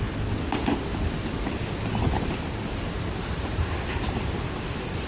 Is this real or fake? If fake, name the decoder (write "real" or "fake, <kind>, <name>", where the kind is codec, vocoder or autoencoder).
real